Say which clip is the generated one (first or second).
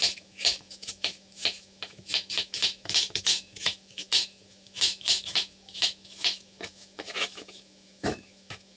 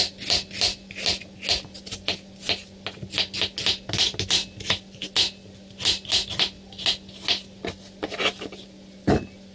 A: first